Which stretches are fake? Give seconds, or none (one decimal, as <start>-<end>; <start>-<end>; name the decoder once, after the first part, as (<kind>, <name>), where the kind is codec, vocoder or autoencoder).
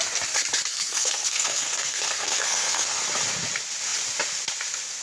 0.7-3.0 (codec, SNAC)